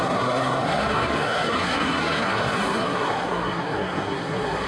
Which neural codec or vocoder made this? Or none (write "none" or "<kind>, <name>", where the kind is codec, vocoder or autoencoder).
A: codec, SNAC